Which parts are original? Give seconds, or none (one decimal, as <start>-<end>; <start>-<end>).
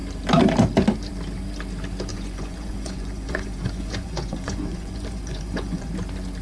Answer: 0.0-2.1; 5.9-6.4